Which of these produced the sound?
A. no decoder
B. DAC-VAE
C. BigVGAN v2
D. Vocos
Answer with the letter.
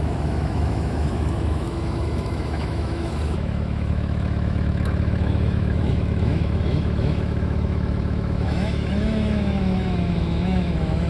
B